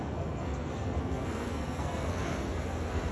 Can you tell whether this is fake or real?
fake